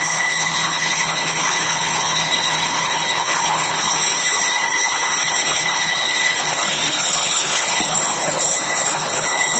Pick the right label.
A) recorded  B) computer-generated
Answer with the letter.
B